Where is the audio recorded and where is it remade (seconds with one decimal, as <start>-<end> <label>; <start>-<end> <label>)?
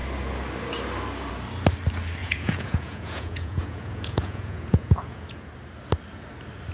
0.0-2.2 recorded; 2.2-5.5 remade; 5.5-6.7 recorded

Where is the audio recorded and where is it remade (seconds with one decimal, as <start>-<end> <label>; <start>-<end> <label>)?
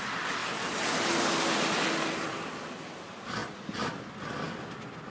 0.0-0.4 recorded; 0.4-2.4 remade; 2.4-5.1 recorded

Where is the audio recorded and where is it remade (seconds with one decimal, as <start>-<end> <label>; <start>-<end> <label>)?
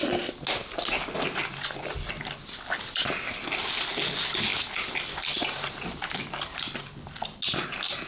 0.0-8.1 recorded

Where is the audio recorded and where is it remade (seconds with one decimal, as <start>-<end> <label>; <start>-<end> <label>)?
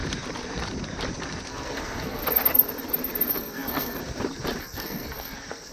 0.0-1.5 recorded; 1.5-2.2 remade; 2.2-3.3 recorded; 3.3-4.0 remade; 4.0-4.6 recorded; 4.6-5.7 remade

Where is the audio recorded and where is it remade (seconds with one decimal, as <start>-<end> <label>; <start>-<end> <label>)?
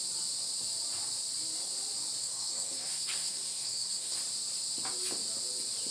0.0-2.2 recorded; 2.2-4.2 remade; 4.2-5.9 recorded